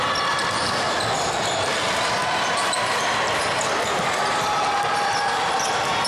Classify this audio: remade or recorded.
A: recorded